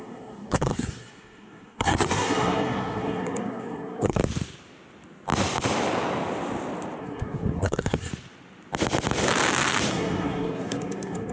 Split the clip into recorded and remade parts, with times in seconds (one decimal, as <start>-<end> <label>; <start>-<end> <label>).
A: 0.0-4.2 remade; 4.2-7.0 recorded; 7.0-8.1 remade; 8.1-9.9 recorded; 9.9-11.3 remade